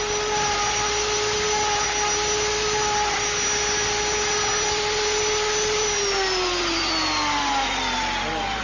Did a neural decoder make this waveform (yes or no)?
no